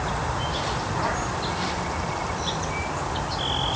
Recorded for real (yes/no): no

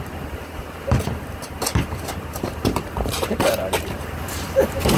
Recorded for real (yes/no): no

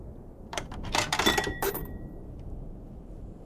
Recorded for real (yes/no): no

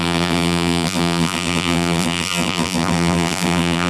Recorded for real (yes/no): no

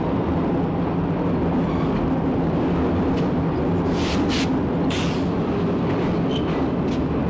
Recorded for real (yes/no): yes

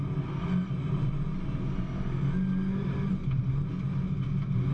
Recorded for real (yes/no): yes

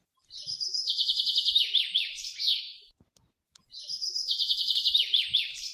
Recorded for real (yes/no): no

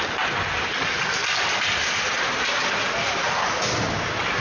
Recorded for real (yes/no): yes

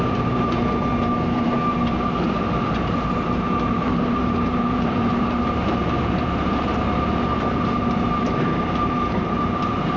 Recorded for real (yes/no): no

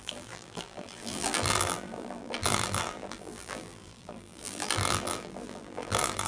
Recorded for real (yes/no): no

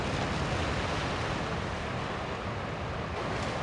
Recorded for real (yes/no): yes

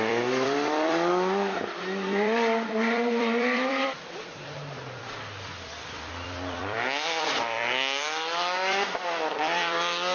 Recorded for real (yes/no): no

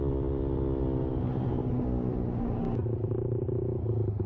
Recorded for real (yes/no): yes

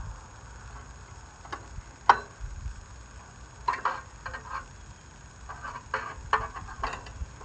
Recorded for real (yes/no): yes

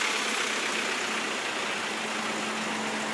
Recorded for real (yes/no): yes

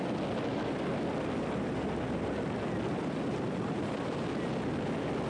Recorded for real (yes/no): yes